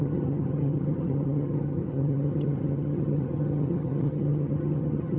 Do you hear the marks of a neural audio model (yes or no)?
yes